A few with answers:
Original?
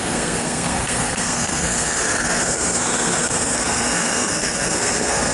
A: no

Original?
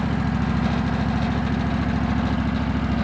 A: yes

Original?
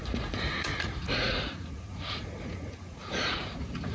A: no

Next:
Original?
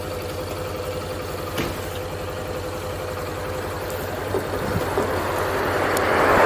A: yes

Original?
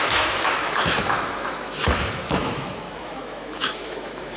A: no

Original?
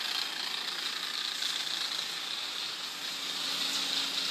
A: yes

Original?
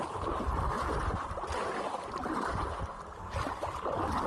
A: yes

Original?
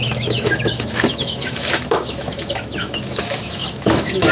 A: no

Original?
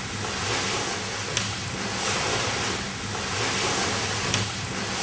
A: yes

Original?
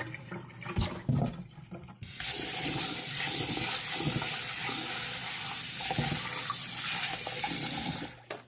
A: no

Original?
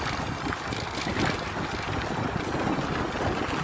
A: yes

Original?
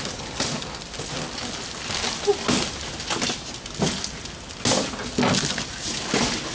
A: yes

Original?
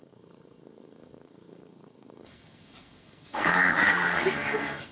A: no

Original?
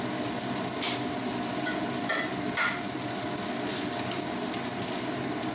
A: yes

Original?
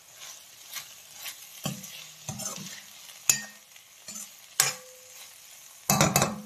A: yes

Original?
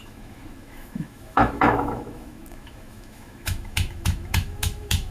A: no